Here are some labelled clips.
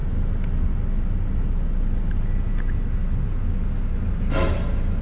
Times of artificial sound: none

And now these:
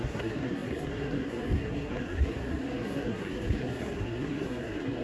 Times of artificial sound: 0.0-5.0 (codec, SNAC)

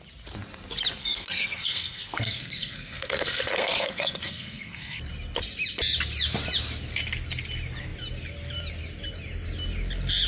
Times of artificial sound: 1.0-5.0 (codec, SNAC)

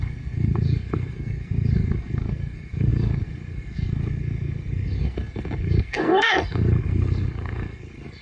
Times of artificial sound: 0.0-8.2 (codec, SNAC)

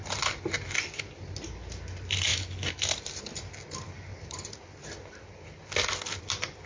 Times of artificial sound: none

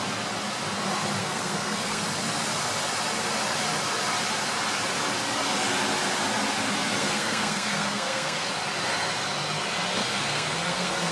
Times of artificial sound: 1.2-2.0 (codec, SNAC); 7.0-8.5; 10.0-11.1